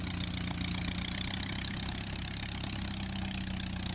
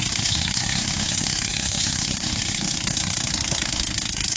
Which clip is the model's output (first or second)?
second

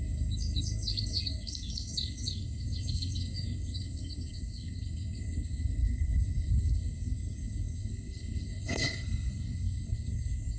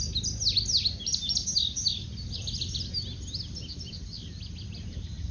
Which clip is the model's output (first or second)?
first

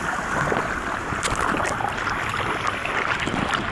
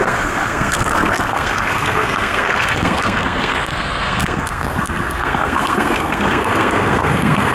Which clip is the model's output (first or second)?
second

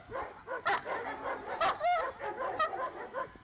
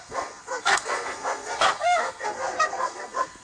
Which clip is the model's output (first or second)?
second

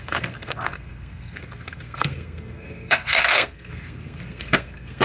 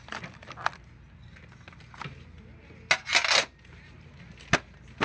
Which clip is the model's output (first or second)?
first